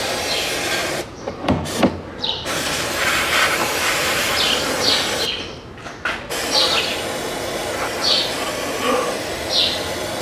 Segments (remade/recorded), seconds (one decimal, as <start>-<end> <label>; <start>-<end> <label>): 0.0-0.8 recorded; 0.8-4.7 remade; 4.7-10.2 recorded